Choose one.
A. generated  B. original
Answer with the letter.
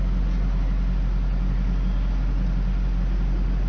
B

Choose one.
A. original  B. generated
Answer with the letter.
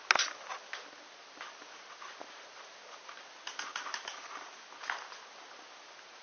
A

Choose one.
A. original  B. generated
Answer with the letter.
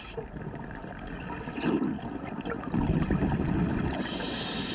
A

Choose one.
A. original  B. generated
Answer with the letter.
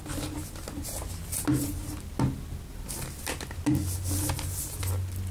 A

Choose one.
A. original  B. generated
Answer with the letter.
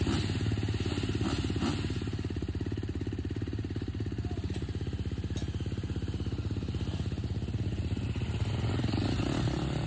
A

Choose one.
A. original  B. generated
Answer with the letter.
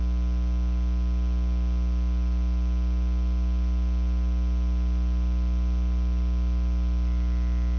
A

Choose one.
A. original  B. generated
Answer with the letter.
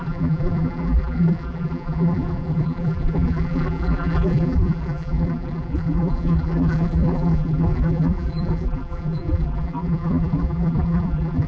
B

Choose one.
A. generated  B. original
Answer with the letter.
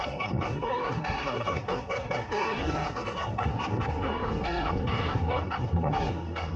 A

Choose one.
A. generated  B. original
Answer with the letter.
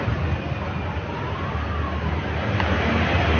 B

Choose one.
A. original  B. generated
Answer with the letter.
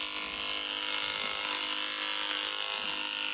A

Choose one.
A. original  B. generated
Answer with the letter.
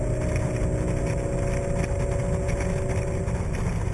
A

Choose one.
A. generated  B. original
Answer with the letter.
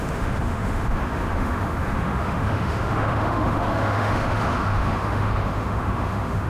A